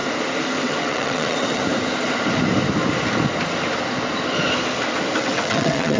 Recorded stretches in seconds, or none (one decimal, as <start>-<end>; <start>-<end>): 0.0-0.6; 1.6-5.2